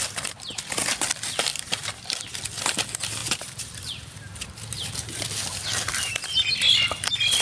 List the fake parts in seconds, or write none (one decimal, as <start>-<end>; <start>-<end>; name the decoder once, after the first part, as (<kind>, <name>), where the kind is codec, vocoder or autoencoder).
1.5-2.4 (vocoder, BigVGAN v2); 3.2-6.5